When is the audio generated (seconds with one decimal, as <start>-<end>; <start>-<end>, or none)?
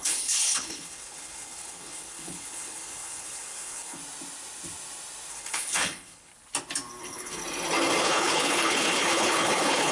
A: 0.0-4.0; 5.3-6.3; 7.0-7.4; 8.0-9.9